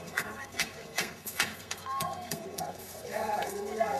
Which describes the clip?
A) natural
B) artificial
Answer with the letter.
B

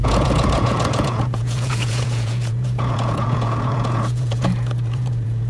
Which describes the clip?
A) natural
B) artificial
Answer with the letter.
B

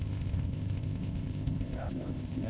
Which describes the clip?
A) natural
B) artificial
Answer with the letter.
B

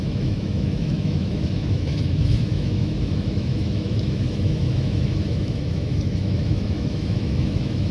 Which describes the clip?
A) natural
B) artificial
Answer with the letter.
B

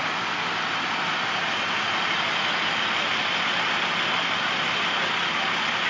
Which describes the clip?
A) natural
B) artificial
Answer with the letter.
A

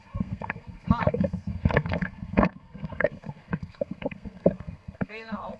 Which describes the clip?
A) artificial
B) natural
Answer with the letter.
A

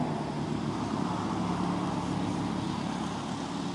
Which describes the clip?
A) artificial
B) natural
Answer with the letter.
B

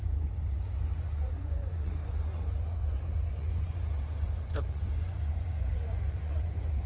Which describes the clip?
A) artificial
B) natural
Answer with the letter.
A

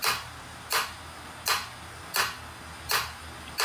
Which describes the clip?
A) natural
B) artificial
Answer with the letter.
A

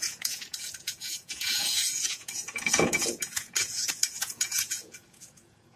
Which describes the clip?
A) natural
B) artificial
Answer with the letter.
B